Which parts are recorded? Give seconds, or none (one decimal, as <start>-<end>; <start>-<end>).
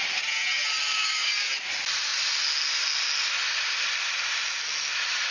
0.0-0.9; 1.5-5.3